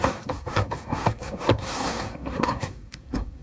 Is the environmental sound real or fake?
fake